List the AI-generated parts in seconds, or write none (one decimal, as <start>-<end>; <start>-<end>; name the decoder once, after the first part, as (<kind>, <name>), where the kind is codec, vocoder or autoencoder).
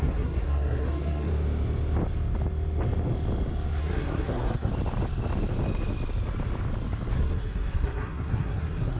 0.0-1.3 (codec, SNAC); 3.8-4.7; 7.1-9.0